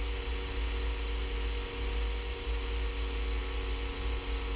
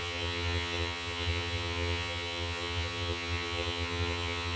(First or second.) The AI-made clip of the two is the second